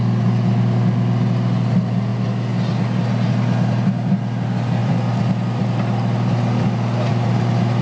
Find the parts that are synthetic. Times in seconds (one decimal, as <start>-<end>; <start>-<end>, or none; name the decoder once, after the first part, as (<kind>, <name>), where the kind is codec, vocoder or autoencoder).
none